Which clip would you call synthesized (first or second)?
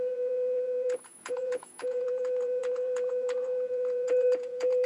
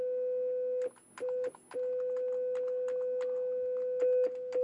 first